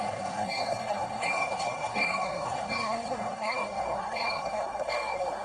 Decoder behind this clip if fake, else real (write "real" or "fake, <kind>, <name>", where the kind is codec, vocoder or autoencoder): fake, codec, SNAC